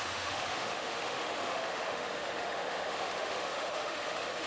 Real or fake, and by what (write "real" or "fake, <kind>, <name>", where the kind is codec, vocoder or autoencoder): fake, autoencoder, DAC-VAE